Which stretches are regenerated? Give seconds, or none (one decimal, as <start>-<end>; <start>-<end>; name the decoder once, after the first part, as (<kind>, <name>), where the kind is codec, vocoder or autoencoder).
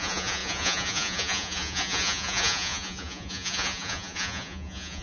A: 0.0-5.0 (vocoder, Vocos)